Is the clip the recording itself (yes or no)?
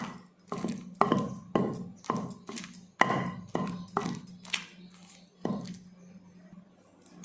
yes